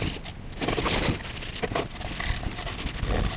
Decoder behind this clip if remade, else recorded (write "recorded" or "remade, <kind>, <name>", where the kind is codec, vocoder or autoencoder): recorded